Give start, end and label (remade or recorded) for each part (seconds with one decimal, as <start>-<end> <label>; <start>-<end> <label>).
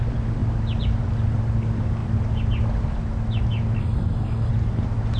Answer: 0.0-3.8 recorded; 3.8-4.5 remade; 4.5-5.2 recorded